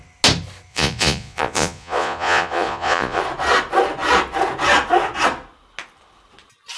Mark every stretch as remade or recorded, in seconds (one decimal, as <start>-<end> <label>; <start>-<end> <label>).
0.0-0.7 recorded; 0.7-3.2 remade; 3.2-6.8 recorded